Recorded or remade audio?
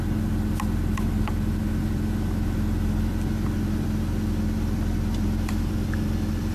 recorded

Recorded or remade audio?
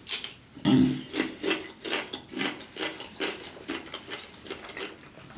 recorded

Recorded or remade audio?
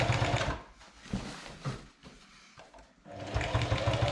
recorded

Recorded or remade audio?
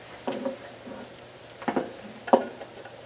remade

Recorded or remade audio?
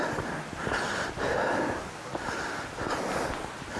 recorded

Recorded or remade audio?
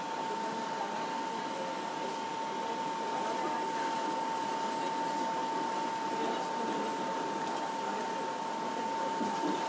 recorded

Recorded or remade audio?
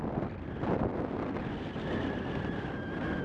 recorded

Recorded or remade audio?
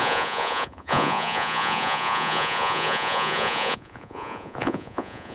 remade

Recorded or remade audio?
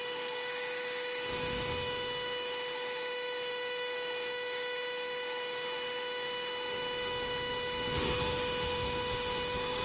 remade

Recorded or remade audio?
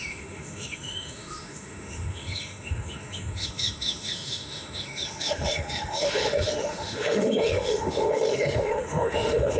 remade